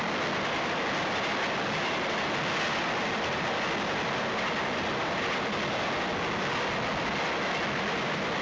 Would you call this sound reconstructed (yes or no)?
no